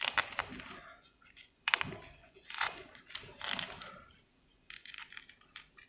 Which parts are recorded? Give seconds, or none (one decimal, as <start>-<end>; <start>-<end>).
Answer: 0.0-1.0; 1.7-2.2; 3.0-4.5; 5.2-5.9